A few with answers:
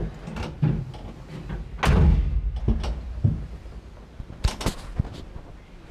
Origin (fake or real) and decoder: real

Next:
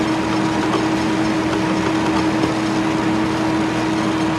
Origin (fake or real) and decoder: real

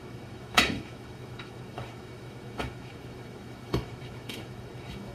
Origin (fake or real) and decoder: fake, autoencoder, DAC-VAE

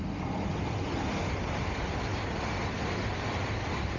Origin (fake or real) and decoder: real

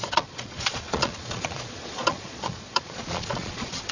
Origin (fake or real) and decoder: fake, vocoder, Vocos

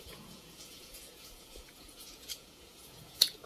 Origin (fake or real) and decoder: fake, vocoder, Vocos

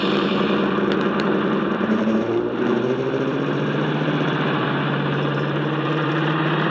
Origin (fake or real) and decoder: fake, vocoder, BigVGAN v2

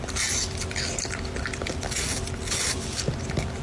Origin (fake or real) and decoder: real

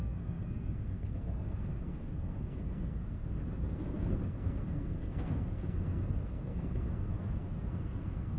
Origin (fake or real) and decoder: fake, codec, SNAC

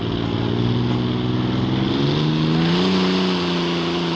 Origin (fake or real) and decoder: real